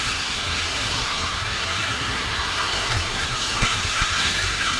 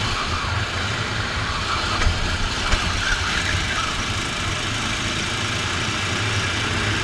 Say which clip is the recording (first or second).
second